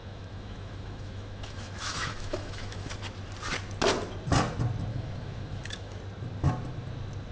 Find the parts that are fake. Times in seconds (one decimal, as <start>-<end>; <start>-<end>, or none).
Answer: 0.0-2.9; 4.9-6.0